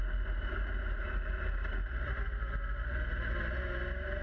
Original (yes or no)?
yes